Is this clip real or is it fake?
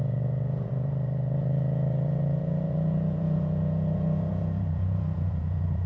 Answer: fake